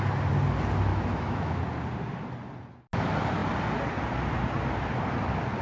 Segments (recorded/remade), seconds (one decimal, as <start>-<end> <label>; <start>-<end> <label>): 0.0-0.9 recorded; 0.9-1.6 remade; 1.6-5.6 recorded